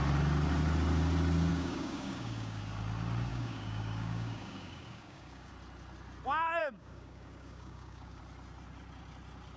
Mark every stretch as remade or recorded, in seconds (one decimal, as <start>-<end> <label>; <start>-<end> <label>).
0.0-1.5 recorded; 1.5-2.6 remade; 2.6-3.3 recorded; 3.3-5.5 remade; 5.5-6.6 recorded; 6.6-8.2 remade; 8.2-9.6 recorded